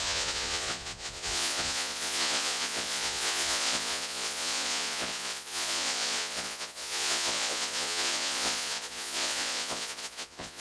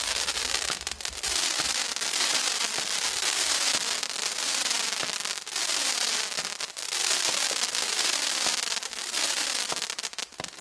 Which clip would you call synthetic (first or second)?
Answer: first